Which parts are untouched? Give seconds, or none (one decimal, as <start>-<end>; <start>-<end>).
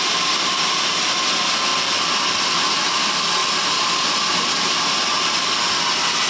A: 0.0-1.7; 2.7-6.3